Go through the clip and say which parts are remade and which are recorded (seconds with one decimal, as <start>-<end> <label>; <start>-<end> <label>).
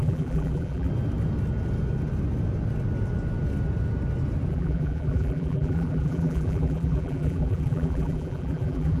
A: 0.0-0.9 remade; 0.9-4.5 recorded; 4.5-9.0 remade